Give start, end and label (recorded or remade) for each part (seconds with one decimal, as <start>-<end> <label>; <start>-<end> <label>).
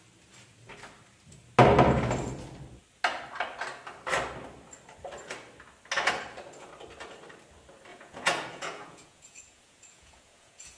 0.0-7.9 recorded; 7.9-10.8 remade